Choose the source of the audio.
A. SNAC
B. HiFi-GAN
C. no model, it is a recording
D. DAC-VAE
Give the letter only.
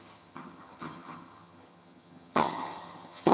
B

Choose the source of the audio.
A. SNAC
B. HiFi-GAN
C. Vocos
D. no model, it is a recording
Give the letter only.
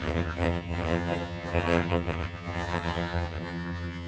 B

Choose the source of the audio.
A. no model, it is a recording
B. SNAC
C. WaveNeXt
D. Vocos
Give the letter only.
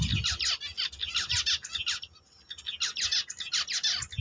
A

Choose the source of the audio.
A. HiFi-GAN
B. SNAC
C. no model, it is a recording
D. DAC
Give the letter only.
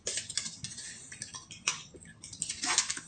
C